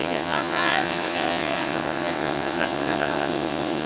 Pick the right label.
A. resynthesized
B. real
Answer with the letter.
A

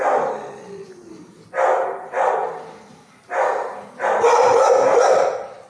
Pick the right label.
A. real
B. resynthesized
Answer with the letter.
B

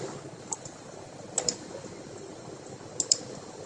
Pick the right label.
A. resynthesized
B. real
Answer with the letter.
B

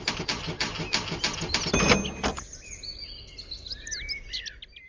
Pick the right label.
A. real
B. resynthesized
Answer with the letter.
A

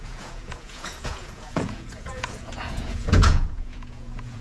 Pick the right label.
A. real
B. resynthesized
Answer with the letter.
B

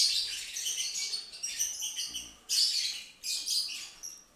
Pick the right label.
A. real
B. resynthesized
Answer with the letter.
A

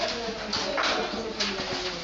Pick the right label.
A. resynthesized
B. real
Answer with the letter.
B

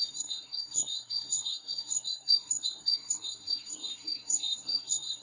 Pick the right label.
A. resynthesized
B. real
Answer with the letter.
A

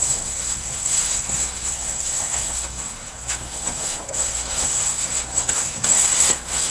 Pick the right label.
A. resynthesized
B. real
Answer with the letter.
A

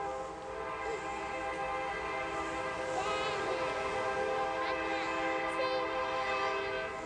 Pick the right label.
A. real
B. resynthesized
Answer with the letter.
A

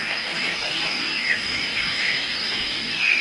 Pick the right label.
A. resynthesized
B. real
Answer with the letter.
A